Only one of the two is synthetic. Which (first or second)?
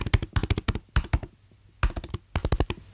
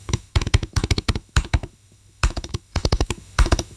second